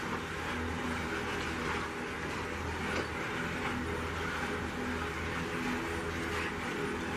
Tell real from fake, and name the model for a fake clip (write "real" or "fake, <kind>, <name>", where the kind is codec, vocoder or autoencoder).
real